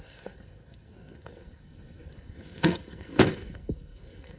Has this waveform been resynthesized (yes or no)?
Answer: yes